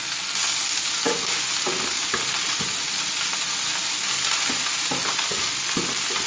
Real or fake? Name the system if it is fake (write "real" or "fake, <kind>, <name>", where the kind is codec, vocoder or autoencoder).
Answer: real